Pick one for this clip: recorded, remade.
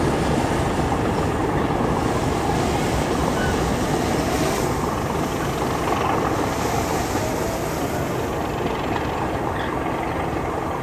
recorded